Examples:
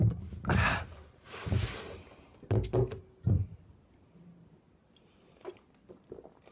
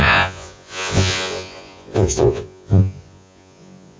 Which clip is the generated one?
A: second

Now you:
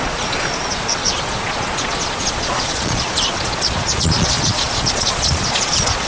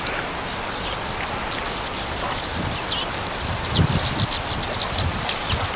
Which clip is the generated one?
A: first